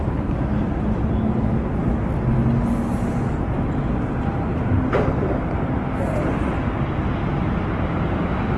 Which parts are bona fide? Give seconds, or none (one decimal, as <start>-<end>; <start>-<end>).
0.0-8.6